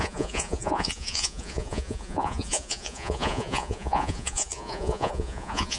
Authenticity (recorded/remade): remade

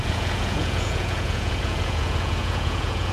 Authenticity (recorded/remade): remade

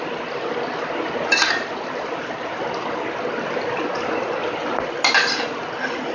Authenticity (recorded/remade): recorded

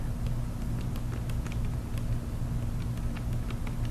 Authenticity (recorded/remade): recorded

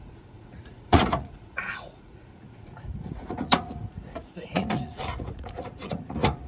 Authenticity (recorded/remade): remade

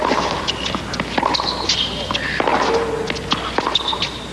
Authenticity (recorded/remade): recorded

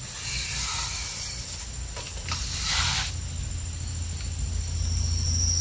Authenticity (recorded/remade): recorded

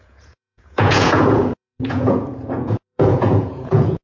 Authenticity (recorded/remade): remade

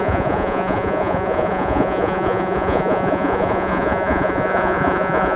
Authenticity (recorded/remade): remade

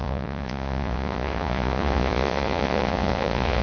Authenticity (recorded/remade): remade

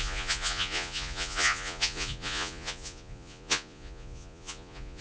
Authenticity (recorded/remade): remade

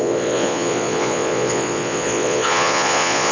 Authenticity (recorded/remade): remade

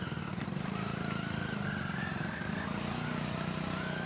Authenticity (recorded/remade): recorded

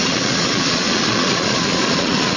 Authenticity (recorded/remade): remade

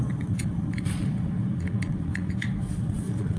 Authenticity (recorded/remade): remade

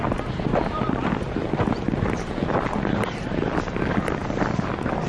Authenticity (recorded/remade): recorded